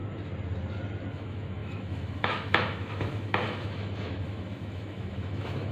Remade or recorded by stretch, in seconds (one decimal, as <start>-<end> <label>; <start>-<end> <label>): 0.0-1.1 recorded; 1.1-5.7 remade